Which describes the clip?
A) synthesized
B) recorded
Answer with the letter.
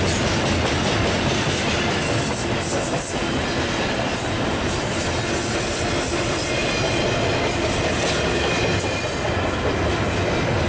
B